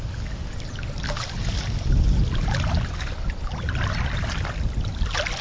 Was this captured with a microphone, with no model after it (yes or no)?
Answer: yes